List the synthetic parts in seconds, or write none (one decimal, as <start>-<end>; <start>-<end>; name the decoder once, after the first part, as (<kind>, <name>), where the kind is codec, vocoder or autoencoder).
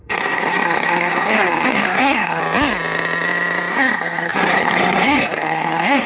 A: 0.0-2.4 (codec, SNAC); 3.7-6.1